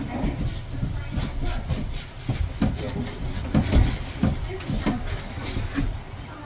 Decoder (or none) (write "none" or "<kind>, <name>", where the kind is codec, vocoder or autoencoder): vocoder, BigVGAN v2